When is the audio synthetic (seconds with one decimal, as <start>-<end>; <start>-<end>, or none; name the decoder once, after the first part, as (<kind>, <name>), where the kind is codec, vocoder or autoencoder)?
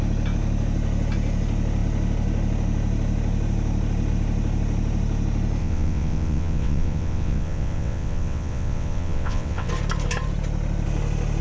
5.6-9.7 (vocoder, WaveNeXt)